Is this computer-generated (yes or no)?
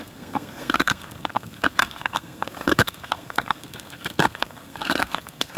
yes